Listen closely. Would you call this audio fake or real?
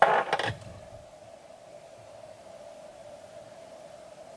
real